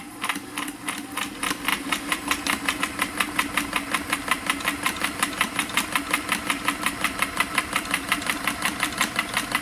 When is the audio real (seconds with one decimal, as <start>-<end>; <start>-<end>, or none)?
0.0-1.7; 2.8-9.6